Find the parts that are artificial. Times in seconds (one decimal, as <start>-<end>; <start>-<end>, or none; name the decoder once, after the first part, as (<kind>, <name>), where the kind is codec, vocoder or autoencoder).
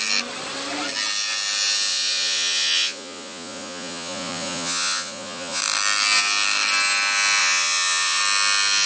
1.9-5.6 (vocoder, Vocos); 7.4-8.2